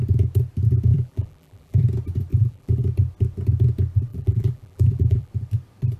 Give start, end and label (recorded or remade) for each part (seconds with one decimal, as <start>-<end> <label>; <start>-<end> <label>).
0.0-0.9 recorded; 0.9-1.8 remade; 1.8-2.3 recorded; 2.3-2.8 remade; 2.8-4.1 recorded; 4.1-5.3 remade; 5.3-6.0 recorded